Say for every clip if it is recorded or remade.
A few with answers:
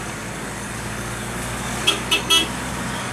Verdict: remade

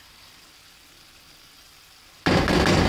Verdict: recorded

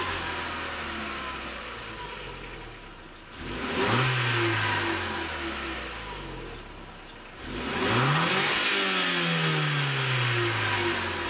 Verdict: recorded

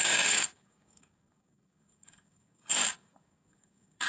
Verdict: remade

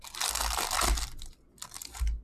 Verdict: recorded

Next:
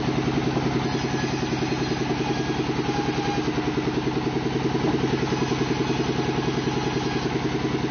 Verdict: recorded